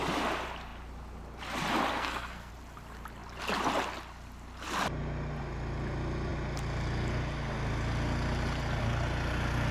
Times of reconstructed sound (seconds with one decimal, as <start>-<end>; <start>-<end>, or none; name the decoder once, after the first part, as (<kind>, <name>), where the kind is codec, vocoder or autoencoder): 1.9-2.5 (codec, SNAC)